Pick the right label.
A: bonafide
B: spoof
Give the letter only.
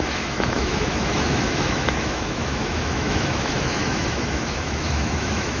B